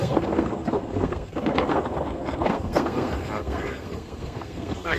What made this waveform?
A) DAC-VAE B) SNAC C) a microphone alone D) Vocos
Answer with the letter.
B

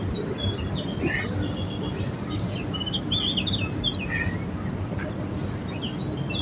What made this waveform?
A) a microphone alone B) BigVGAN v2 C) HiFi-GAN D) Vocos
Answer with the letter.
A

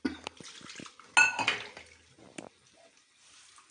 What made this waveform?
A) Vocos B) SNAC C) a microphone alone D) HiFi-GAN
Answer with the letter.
C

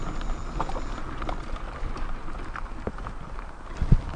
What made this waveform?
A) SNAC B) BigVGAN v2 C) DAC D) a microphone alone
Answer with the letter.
D